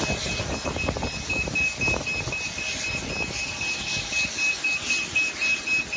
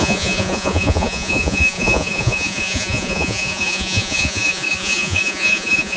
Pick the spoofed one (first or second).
second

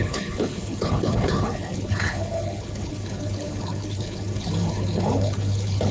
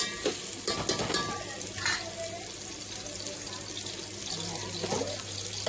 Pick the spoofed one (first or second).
first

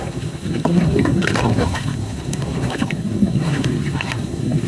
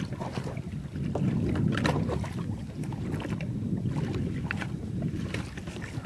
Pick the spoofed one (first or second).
first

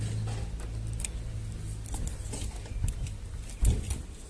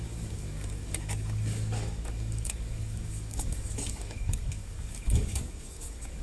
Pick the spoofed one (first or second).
second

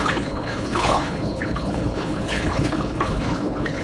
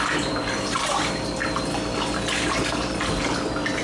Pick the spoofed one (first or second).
first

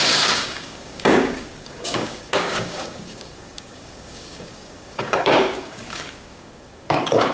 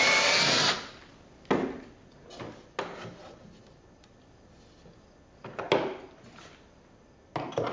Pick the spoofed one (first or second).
first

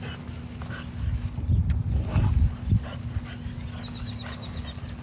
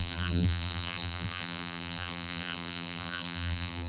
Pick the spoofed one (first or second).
second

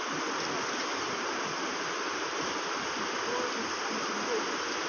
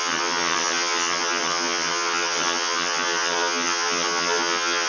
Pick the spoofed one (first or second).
second